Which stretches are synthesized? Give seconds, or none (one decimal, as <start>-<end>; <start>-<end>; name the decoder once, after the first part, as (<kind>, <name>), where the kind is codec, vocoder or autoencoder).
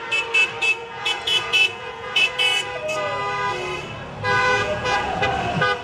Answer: 0.8-2.3 (vocoder, Vocos); 4.4-5.2